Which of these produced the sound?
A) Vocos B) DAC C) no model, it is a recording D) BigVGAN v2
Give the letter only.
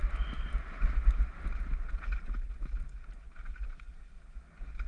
C